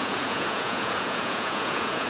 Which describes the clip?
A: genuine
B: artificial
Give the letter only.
B